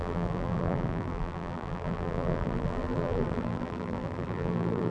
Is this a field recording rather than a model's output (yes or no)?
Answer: no